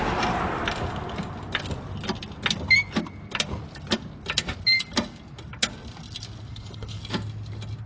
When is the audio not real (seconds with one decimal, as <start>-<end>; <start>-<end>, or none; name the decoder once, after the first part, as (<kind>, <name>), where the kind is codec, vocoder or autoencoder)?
6.5-7.0 (codec, HILCodec)